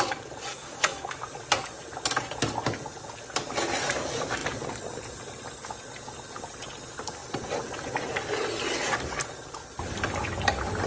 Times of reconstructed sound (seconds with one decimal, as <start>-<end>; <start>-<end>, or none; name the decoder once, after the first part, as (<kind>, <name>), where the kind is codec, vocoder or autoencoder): 0.5-1.1 (codec, SNAC)

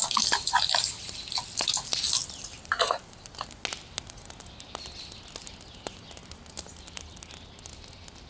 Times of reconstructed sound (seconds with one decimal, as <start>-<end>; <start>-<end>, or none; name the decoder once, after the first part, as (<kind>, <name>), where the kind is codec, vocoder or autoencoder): none

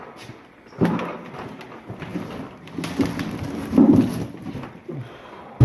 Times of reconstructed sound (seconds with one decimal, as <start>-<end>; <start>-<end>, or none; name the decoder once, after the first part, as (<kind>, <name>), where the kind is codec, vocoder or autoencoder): none